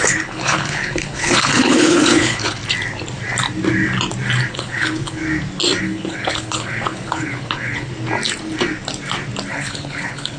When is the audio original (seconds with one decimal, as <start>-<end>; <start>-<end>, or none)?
2.6-4.5; 5.2-5.8; 7.9-9.5